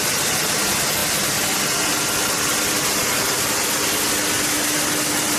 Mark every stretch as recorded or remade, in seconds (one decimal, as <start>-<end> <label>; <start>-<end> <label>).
0.0-5.4 recorded